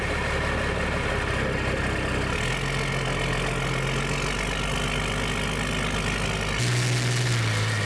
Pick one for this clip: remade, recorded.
recorded